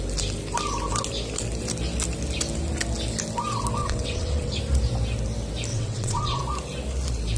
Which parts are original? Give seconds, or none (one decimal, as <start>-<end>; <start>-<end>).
0.0-3.8; 4.6-5.7; 6.4-7.4